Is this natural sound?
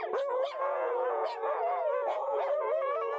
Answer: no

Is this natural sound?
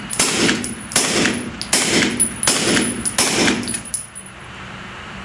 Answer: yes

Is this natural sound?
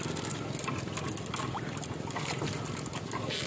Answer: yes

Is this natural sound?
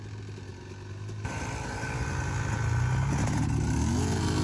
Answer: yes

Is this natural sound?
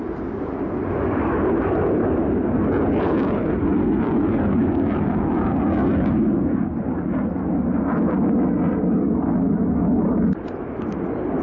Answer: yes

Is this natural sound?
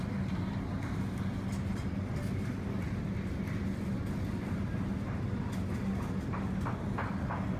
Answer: yes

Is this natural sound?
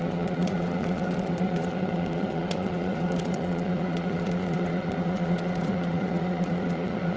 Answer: no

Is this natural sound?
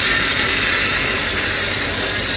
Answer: yes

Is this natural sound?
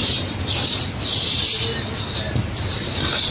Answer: yes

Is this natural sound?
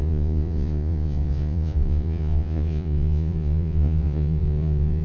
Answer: no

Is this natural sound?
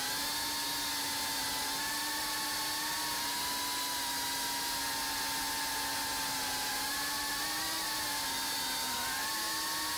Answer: yes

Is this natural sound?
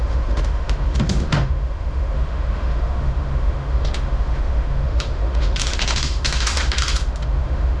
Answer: no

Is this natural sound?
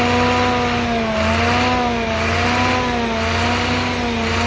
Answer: yes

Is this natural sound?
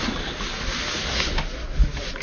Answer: yes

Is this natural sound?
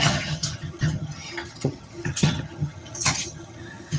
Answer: no